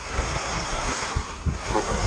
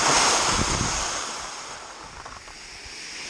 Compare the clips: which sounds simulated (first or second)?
first